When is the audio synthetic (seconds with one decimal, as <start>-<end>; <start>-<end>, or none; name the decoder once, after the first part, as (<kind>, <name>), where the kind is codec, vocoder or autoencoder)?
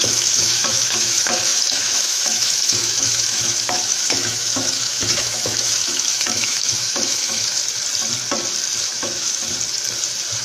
0.0-7.6 (autoencoder, DAC-VAE); 8.8-9.4